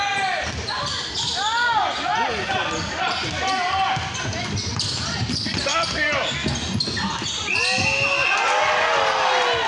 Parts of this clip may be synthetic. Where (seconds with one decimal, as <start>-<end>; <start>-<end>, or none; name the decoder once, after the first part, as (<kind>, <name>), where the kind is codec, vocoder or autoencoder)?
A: none